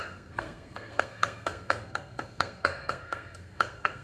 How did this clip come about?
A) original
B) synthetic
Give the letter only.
B